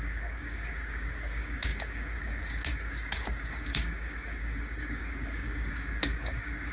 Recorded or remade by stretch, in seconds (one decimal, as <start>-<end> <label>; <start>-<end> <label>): 0.0-6.7 remade